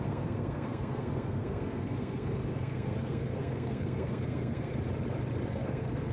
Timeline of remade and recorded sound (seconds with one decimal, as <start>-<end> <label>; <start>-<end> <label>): 0.0-4.7 remade; 4.7-5.5 recorded; 5.5-6.1 remade